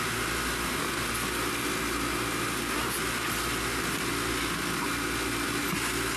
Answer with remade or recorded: recorded